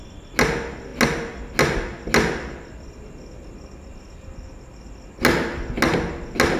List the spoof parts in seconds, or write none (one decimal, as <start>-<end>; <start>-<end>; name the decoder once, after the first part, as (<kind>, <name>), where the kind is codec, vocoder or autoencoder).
none